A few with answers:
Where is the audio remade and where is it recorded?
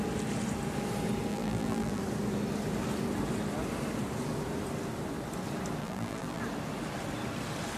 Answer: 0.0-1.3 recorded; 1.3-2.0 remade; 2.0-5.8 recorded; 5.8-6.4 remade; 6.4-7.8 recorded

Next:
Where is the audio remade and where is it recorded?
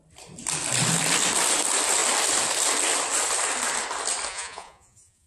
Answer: 0.0-4.3 recorded; 4.3-5.3 remade